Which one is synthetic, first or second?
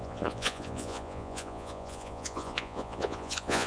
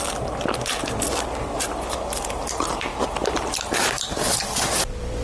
first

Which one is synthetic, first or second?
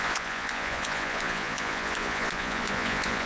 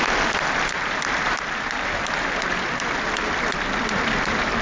first